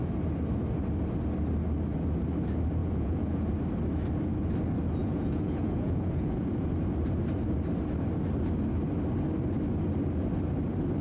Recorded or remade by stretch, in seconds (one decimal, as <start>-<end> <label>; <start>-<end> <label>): 0.0-2.8 recorded; 2.8-3.5 remade; 3.5-5.0 recorded; 5.0-6.7 remade; 6.7-11.0 recorded